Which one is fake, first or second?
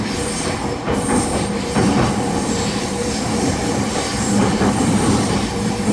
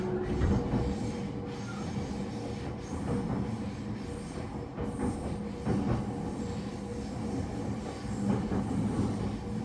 first